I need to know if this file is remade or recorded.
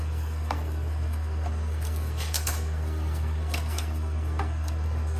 remade